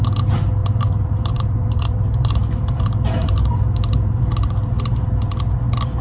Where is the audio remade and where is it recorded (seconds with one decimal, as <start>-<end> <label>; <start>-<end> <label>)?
0.0-0.6 recorded; 0.6-4.2 remade; 4.2-6.0 recorded